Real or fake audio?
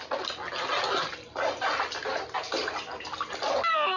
real